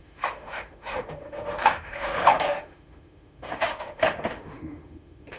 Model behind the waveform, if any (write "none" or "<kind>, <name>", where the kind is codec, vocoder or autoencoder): autoencoder, DAC-VAE